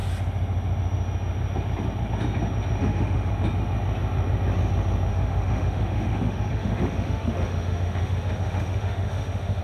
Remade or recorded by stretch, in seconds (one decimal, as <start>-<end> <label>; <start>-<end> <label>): 0.0-2.8 recorded; 2.8-3.3 remade; 3.3-5.1 recorded; 5.1-9.6 remade